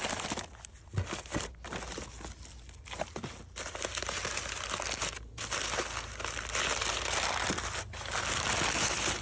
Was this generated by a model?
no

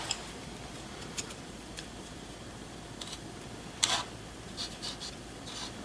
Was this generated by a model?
yes